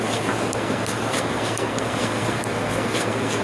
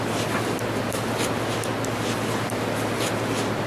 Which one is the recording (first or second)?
second